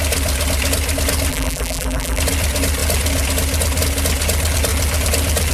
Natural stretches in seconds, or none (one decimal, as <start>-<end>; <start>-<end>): 0.0-1.3; 2.2-5.5